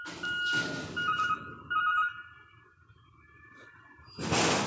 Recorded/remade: recorded